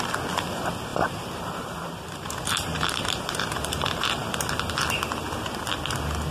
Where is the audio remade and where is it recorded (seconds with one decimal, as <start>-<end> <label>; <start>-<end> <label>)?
0.0-0.9 recorded; 0.9-4.7 remade; 4.7-6.3 recorded